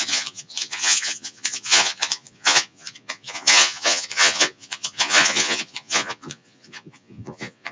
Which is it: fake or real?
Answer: fake